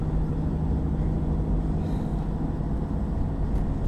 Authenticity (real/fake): real